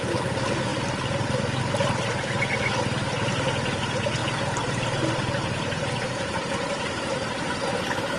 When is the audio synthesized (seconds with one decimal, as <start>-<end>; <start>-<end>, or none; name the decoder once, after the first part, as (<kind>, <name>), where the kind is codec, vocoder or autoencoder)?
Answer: none